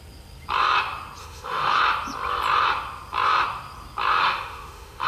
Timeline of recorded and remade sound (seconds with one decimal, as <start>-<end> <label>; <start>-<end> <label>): 0.0-1.2 recorded; 1.2-1.8 remade; 1.8-4.2 recorded; 4.2-5.1 remade